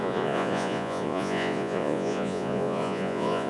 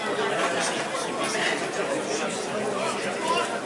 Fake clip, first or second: first